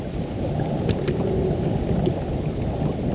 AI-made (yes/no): no